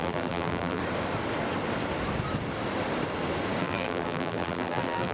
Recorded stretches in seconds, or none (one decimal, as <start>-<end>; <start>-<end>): 0.8-3.6